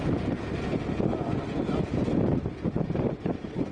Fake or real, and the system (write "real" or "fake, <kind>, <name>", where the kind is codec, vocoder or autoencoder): real